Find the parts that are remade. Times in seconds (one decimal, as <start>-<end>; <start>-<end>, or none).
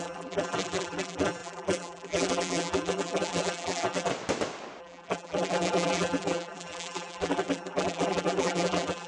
0.0-4.1; 4.8-9.1